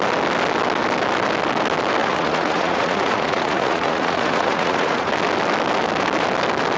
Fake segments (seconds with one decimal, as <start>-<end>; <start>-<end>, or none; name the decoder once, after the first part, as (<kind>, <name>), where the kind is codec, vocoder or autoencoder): 2.0-5.1 (vocoder, Vocos)